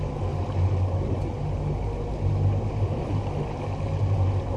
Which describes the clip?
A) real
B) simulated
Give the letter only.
A